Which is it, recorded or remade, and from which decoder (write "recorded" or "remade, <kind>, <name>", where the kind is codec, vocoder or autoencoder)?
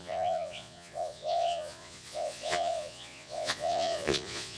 remade, vocoder, Vocos